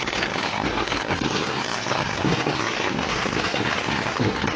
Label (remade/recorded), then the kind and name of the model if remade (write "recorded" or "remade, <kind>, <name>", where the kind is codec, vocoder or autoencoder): remade, codec, SNAC